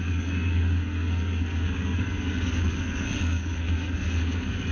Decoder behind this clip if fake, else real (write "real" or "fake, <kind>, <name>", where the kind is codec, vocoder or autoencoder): fake, codec, SNAC